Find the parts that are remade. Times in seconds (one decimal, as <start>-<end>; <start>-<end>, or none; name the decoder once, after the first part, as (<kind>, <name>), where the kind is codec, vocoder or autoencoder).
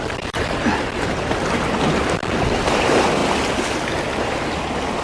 none